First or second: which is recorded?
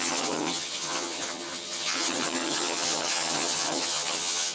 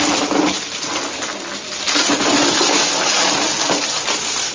second